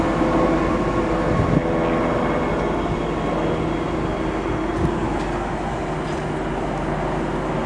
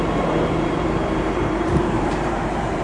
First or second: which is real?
first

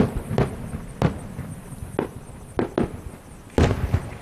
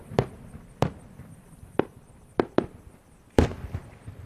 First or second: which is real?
first